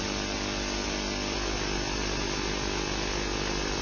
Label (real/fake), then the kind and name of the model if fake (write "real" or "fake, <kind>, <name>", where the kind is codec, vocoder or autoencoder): real